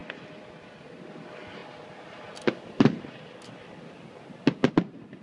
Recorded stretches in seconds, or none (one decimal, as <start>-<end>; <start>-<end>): 0.0-5.2